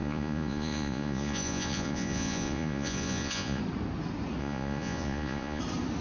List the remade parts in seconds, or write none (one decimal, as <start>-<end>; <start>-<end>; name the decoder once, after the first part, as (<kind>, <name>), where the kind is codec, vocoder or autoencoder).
0.0-3.6 (vocoder, Vocos); 4.4-5.6